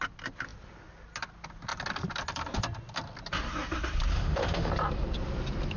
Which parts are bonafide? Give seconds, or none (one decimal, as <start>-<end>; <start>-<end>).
0.0-4.1; 4.7-5.8